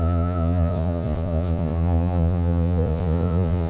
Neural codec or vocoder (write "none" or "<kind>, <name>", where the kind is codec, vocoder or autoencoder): vocoder, Vocos